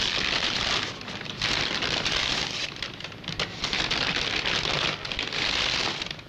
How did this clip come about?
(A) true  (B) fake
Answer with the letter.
A